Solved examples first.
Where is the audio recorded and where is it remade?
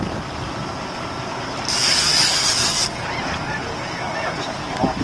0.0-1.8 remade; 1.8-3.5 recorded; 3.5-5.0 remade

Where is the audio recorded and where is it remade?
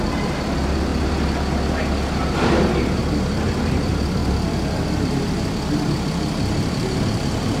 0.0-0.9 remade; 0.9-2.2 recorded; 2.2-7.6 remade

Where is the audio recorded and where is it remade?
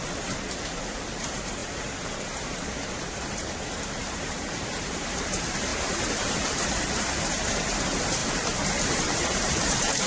0.0-1.2 recorded; 1.2-8.2 remade; 8.2-8.7 recorded; 8.7-10.1 remade